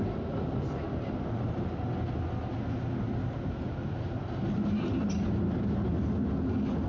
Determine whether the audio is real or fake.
real